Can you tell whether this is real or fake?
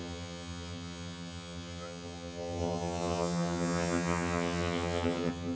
fake